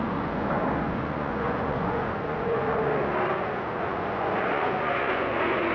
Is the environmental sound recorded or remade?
remade